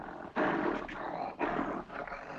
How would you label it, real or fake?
real